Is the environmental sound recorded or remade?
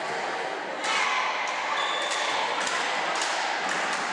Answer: recorded